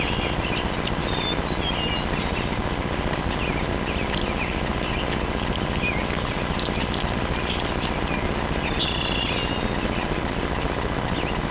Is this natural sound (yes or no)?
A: yes